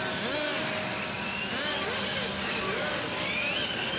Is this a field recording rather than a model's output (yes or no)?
yes